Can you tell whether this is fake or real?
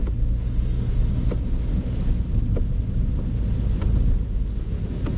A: real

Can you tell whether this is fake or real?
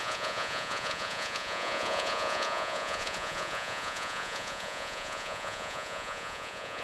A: fake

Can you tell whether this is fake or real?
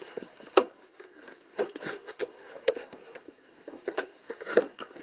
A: fake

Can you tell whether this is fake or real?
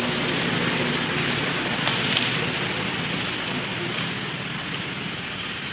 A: real